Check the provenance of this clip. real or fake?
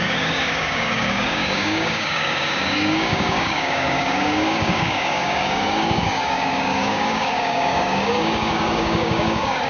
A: fake